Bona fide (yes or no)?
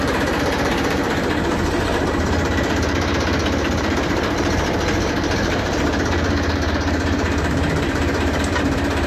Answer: no